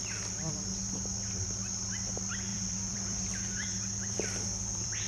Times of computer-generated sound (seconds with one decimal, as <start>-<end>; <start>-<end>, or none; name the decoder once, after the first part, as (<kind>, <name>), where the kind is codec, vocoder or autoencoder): 2.5-5.1 (vocoder, BigVGAN v2)